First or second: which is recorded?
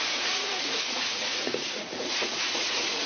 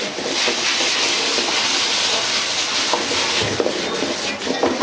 second